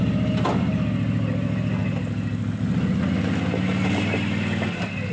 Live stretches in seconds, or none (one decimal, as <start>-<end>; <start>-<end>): 0.0-5.1